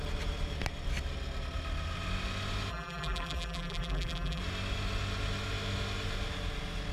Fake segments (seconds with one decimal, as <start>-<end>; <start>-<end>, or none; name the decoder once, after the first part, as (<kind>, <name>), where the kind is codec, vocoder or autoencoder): 2.7-4.4 (vocoder, BigVGAN v2)